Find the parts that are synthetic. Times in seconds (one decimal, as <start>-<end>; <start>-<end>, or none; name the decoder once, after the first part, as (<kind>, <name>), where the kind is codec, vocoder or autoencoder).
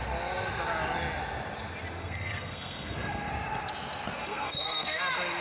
2.0-3.3 (codec, SNAC); 4.2-5.0